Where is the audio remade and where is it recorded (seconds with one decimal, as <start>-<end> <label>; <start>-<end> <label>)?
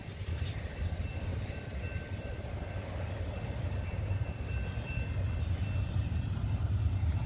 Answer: 0.0-7.3 recorded